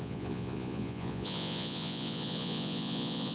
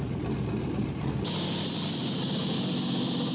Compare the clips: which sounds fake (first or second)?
first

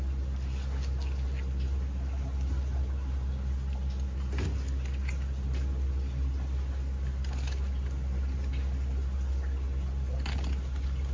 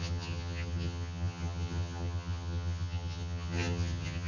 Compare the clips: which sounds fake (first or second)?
second